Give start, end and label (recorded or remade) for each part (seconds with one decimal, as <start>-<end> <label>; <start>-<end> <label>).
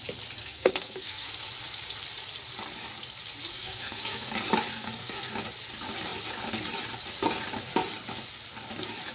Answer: 0.0-0.4 recorded; 0.4-1.3 remade; 1.3-3.5 recorded; 3.5-4.3 remade; 4.3-4.7 recorded; 4.7-5.3 remade; 5.3-9.1 recorded